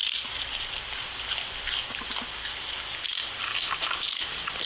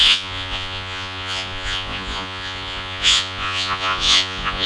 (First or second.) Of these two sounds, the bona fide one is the first